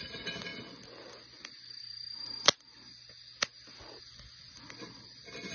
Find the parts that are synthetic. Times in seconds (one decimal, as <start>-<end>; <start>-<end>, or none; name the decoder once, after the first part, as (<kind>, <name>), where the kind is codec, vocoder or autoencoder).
none